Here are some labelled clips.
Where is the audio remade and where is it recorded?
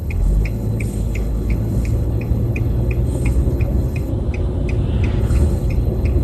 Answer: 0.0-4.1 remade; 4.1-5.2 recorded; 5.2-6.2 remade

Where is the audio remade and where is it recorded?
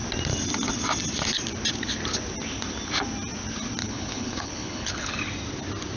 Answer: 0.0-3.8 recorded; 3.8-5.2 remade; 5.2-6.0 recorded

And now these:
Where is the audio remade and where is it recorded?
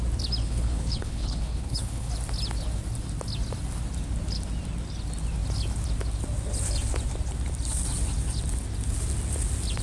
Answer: 0.0-0.4 recorded; 0.4-2.1 remade; 2.1-9.8 recorded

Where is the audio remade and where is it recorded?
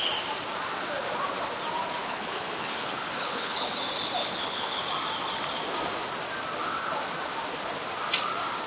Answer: 0.0-2.0 recorded; 2.0-3.7 remade; 3.7-4.2 recorded; 4.2-4.8 remade; 4.8-8.7 recorded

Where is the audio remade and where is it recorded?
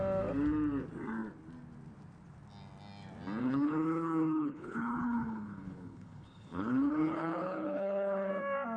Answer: 0.0-3.4 recorded; 3.4-8.3 remade; 8.3-8.8 recorded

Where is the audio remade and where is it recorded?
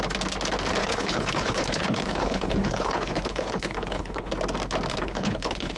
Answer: 0.0-0.8 recorded; 0.8-4.3 remade; 4.3-4.9 recorded; 4.9-5.8 remade